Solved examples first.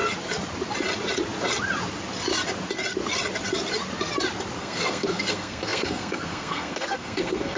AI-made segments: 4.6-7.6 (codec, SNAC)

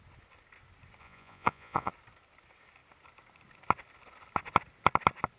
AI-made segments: 1.0-1.9 (vocoder, Vocos)

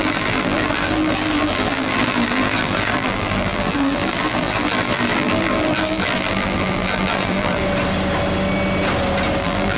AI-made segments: 0.0-7.6 (vocoder, BigVGAN v2); 9.4-9.8